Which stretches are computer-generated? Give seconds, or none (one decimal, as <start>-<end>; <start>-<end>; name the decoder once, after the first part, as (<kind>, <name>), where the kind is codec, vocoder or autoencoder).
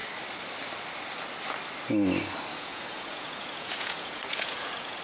2.5-5.0 (vocoder, Vocos)